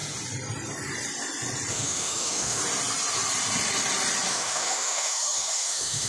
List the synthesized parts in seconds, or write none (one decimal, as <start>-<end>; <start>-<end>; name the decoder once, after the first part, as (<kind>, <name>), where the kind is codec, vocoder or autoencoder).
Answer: 1.7-2.6 (autoencoder, DAC-VAE); 4.3-6.1